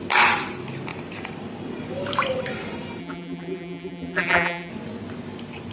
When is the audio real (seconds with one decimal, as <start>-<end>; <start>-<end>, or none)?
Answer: 0.0-3.0; 4.7-5.7